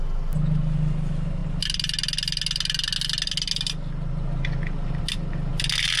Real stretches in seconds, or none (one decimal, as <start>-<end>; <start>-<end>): 0.0-6.0